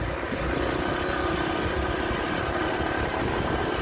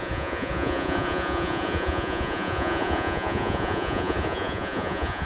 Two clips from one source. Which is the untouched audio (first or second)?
first